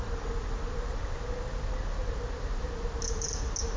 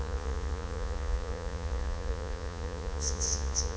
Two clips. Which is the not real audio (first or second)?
second